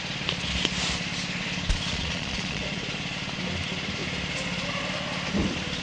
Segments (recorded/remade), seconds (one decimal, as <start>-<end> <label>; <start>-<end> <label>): 0.0-1.9 recorded; 1.9-2.6 remade; 2.6-5.8 recorded